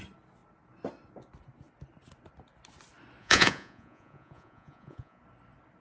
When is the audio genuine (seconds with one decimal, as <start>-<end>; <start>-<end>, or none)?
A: 0.0-3.2; 5.2-5.8